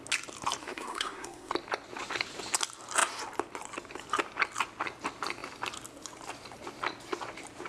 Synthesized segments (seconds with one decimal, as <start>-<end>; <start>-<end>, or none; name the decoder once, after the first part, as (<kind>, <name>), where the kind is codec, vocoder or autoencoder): 0.6-1.5 (codec, SNAC)